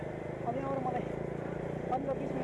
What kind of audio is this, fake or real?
real